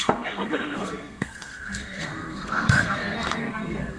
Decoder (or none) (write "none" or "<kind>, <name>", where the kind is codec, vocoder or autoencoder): codec, SNAC